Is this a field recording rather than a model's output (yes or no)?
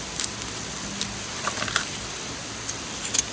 yes